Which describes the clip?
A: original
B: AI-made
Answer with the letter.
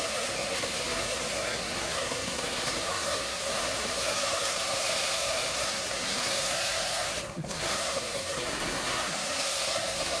B